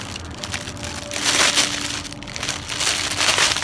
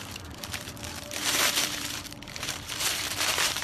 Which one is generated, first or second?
second